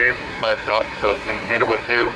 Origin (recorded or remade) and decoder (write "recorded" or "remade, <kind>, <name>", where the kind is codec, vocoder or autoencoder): remade, codec, SNAC